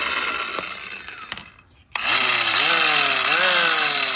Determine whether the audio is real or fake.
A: real